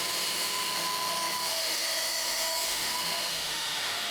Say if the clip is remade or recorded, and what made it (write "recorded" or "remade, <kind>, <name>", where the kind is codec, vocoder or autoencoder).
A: remade, autoencoder, DAC-VAE